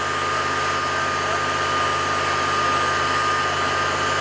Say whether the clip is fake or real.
real